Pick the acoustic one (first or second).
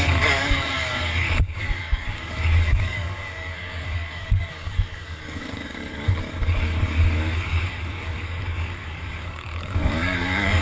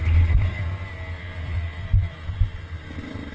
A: second